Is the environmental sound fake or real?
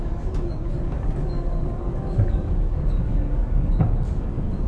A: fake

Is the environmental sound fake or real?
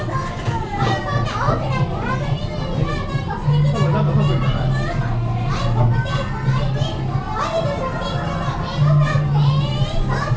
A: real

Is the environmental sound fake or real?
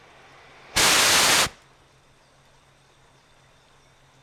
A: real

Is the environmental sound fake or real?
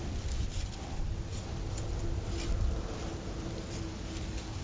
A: real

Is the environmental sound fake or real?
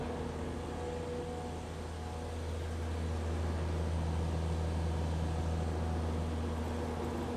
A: real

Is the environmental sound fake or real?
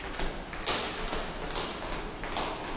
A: real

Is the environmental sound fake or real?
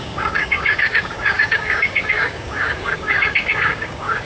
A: fake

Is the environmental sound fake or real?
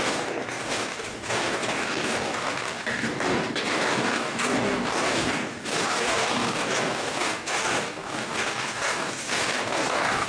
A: fake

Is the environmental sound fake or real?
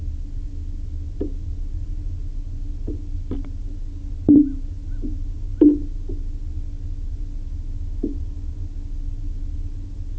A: real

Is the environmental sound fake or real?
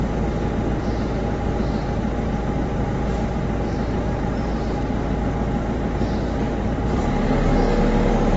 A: real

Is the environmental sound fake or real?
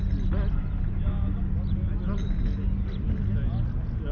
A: real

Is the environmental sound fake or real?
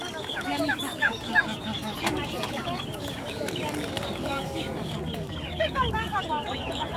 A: fake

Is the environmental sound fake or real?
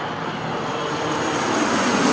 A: real